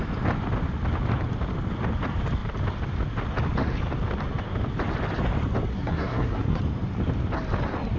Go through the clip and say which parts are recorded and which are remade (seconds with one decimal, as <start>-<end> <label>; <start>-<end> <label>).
0.0-5.7 recorded; 5.7-6.6 remade; 6.6-8.0 recorded